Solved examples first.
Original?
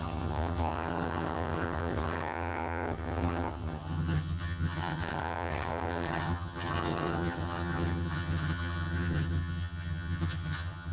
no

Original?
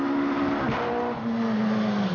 yes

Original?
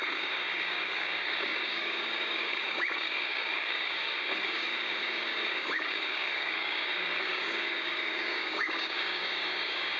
no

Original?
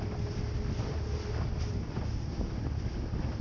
yes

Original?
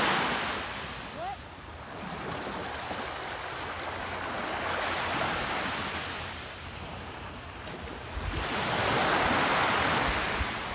yes